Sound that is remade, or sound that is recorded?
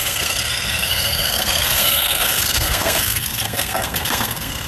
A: remade